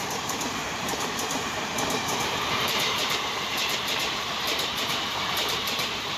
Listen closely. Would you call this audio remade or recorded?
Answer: remade